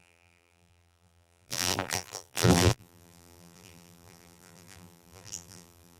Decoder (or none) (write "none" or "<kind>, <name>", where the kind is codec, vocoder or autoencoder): vocoder, BigVGAN v2